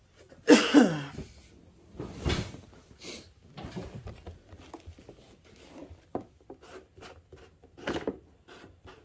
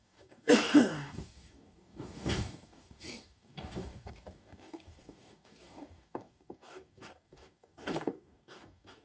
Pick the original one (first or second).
first